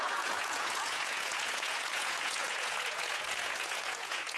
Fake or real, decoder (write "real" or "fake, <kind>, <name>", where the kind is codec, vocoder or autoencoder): fake, vocoder, Vocos